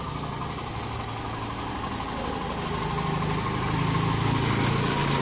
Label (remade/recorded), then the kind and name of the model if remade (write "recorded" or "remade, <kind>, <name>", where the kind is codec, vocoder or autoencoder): recorded